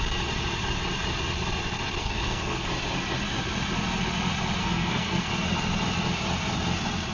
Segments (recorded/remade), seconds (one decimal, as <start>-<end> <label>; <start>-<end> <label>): 0.0-2.0 recorded; 2.0-2.7 remade; 2.7-4.6 recorded; 4.6-5.3 remade; 5.3-7.1 recorded